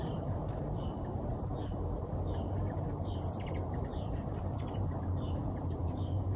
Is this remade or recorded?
remade